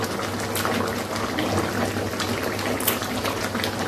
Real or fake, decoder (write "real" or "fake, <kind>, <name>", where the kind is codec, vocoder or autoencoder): real